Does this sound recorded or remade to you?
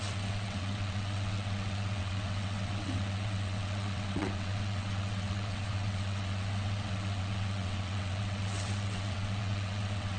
remade